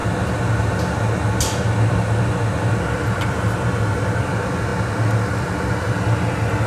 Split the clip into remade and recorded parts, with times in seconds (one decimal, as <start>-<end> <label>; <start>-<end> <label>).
0.0-6.7 recorded